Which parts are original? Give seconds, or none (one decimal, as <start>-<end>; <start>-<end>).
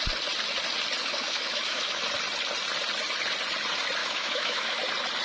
0.0-1.0; 2.0-4.0; 4.8-5.2